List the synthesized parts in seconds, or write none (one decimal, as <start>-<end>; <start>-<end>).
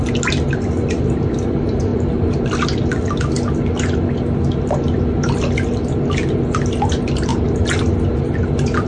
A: none